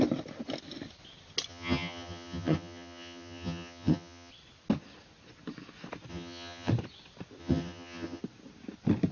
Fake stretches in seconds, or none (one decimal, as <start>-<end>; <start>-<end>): 1.5-4.3; 6.1-6.7; 7.4-8.2